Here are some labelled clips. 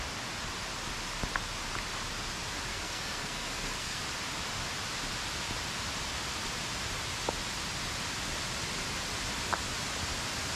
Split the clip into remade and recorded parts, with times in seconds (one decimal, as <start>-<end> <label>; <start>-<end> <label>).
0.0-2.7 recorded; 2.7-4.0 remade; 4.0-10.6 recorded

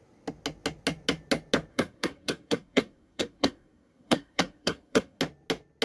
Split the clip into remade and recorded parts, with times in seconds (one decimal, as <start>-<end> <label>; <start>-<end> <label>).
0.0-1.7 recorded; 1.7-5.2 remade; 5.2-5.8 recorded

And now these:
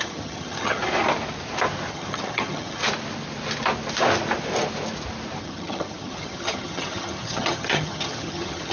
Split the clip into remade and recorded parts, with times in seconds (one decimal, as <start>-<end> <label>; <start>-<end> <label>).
0.0-0.8 remade; 0.8-1.9 recorded; 1.9-2.8 remade; 2.8-5.4 recorded; 5.4-8.7 remade

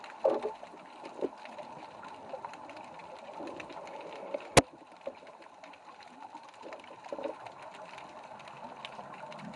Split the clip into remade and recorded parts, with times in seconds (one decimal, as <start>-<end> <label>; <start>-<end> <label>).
0.0-9.6 recorded